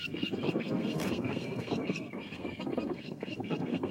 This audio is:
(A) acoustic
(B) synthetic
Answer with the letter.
B